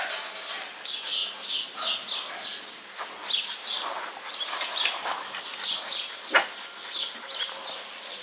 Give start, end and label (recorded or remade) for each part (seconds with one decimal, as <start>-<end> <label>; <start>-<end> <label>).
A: 0.0-8.2 recorded